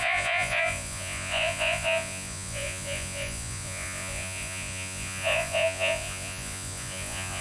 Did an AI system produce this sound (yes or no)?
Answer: yes